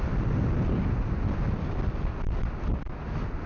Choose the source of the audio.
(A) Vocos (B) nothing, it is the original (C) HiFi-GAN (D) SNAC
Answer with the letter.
B